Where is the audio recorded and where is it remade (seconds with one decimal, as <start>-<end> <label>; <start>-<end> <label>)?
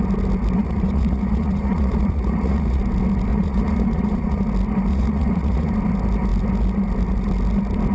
0.0-0.6 recorded; 0.6-2.8 remade; 2.8-3.3 recorded; 3.3-4.4 remade; 4.4-4.9 recorded; 4.9-5.7 remade; 5.7-7.9 recorded